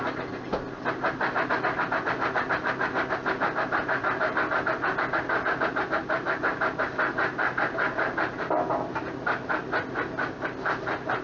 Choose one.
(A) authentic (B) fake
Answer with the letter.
A